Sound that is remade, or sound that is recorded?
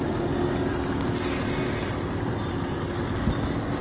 recorded